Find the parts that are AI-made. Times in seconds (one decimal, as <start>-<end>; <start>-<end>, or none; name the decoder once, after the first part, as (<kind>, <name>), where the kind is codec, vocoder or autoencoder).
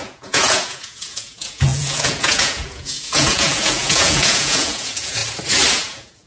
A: 0.0-5.2 (vocoder, Vocos); 5.7-6.3